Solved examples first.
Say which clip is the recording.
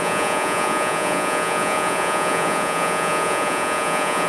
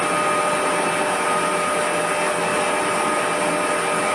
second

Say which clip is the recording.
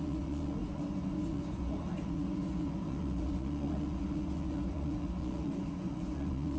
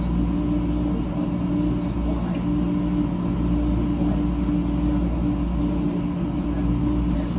second